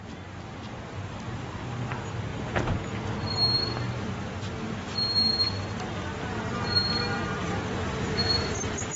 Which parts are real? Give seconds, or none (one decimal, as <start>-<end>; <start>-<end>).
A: 0.0-2.3; 3.0-9.0